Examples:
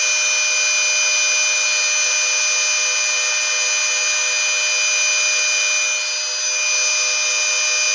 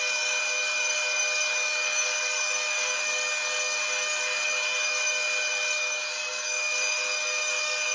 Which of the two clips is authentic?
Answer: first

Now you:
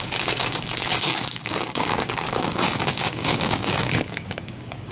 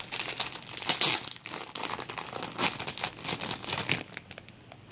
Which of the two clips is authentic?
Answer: second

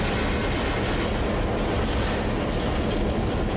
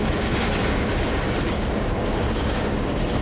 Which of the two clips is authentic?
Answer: first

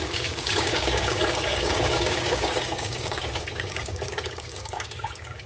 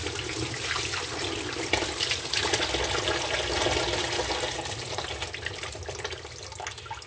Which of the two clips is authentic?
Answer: second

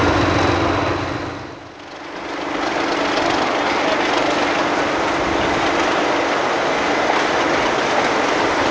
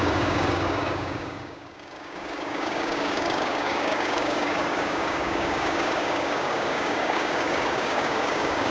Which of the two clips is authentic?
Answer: first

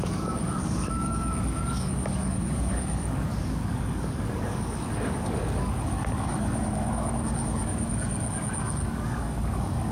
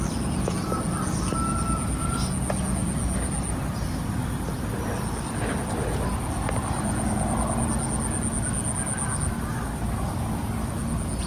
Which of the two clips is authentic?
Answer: second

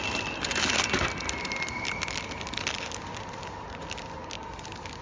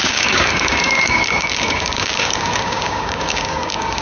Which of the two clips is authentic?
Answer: first